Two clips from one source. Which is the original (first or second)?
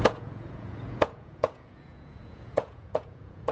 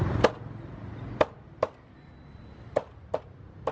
second